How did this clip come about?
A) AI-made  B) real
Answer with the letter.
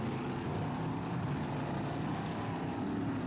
B